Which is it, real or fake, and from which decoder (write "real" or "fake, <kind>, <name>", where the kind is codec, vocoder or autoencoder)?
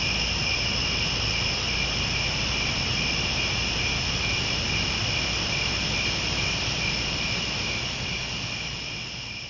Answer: real